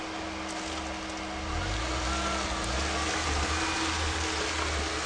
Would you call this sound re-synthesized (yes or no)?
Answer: no